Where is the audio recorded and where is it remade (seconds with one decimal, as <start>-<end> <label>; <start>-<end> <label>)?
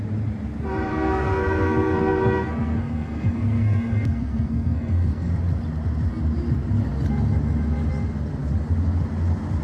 0.0-0.9 recorded; 0.9-5.3 remade; 5.3-9.6 recorded